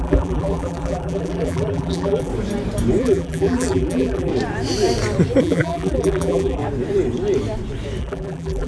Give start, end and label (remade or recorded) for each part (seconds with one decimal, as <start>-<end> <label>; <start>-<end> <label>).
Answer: 0.0-2.3 remade; 2.3-3.0 recorded; 3.0-4.3 remade; 4.3-5.4 recorded; 5.4-6.6 remade; 6.6-8.0 recorded; 8.0-8.7 remade